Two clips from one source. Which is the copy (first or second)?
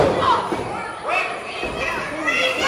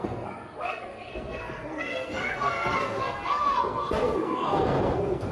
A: second